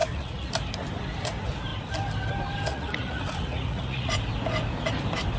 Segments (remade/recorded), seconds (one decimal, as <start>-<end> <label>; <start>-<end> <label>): 0.0-0.5 remade; 0.5-2.7 recorded; 2.7-4.1 remade; 4.1-5.4 recorded